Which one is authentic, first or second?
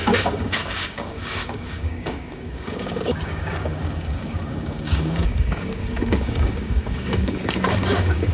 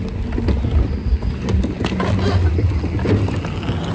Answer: second